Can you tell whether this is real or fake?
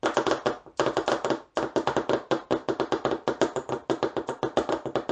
real